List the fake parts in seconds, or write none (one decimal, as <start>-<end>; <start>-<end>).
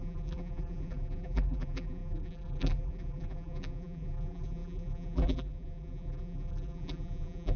0.0-7.6